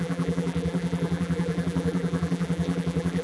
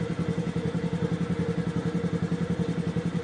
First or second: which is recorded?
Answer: second